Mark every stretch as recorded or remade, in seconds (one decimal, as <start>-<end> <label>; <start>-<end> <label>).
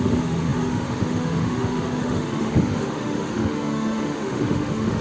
0.0-5.0 remade